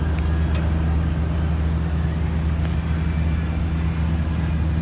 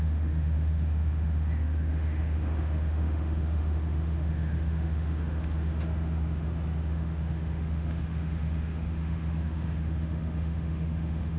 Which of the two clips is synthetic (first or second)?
second